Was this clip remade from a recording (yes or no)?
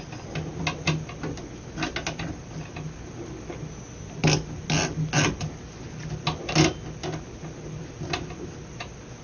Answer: no